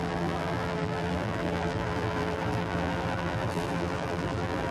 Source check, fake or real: fake